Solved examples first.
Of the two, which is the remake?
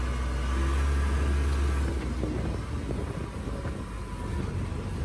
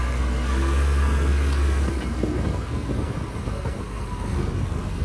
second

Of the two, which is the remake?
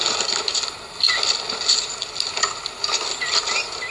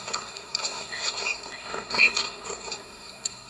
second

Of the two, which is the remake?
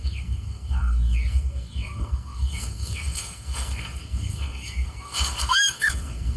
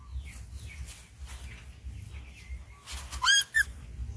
first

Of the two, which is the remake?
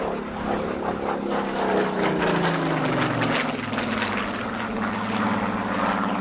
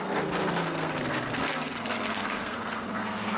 second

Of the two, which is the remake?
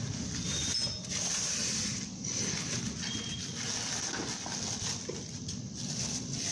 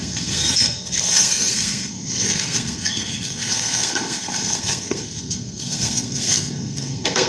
second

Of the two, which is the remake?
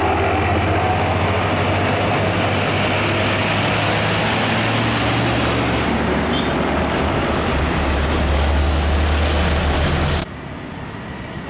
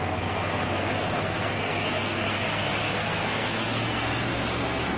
second